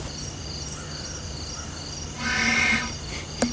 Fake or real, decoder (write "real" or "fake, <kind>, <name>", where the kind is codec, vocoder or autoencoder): real